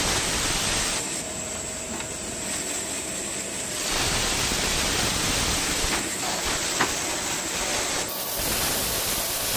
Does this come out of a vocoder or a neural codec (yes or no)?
no